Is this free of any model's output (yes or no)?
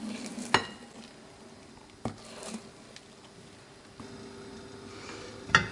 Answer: yes